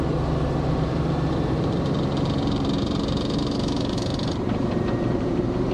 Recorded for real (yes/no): no